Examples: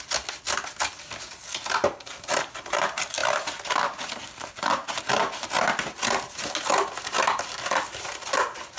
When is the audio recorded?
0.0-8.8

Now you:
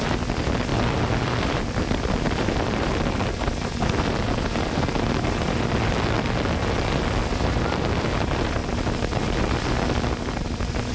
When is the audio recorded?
0.0-0.7; 5.9-7.2; 7.9-10.9

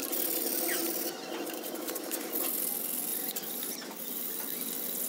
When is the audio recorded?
2.7-3.1

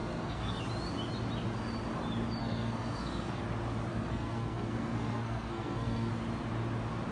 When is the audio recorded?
0.6-2.4; 3.4-3.9; 6.1-7.1

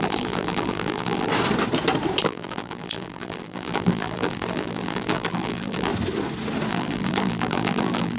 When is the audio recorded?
1.3-2.2; 5.9-6.7

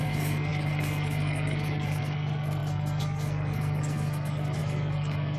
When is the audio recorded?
none

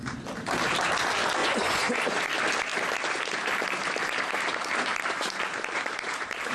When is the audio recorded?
0.0-1.4; 2.0-6.5